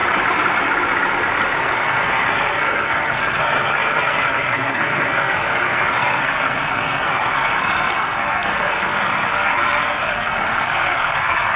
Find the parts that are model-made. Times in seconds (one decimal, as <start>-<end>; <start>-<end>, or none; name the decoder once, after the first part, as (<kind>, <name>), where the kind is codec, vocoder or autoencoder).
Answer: 1.6-11.6 (codec, SNAC)